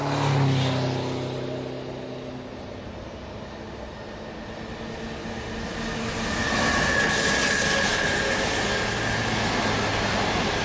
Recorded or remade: recorded